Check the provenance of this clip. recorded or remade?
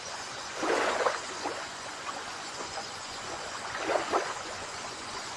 remade